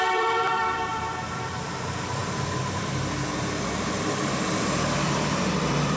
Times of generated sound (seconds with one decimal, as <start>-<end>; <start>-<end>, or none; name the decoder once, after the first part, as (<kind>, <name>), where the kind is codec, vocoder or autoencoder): 0.0-6.0 (vocoder, BigVGAN v2)